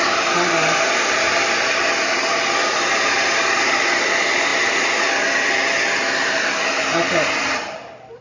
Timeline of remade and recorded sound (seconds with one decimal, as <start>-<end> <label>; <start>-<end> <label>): 0.0-8.2 recorded